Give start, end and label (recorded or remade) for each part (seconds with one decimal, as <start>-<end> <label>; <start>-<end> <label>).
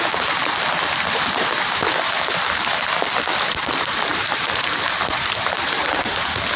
0.0-4.1 recorded; 4.1-6.1 remade; 6.1-6.6 recorded